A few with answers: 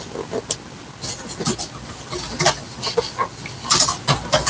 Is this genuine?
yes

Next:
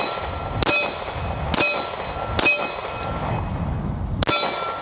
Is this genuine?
yes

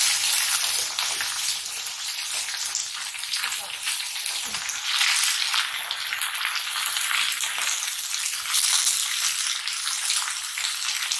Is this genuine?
yes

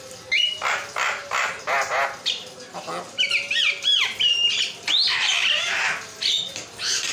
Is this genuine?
yes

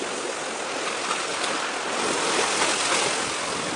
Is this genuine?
yes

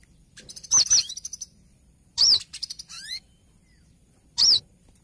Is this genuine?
no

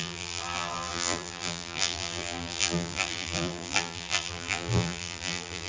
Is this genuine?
no